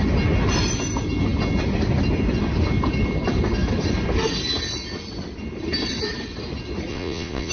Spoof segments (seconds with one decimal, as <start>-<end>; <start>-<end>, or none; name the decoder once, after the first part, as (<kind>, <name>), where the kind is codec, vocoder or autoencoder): 6.9-7.5 (vocoder, Vocos)